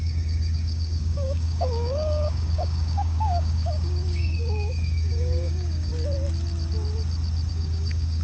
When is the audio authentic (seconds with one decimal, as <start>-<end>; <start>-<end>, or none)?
5.9-7.5